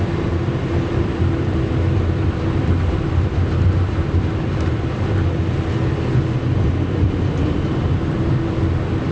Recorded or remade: remade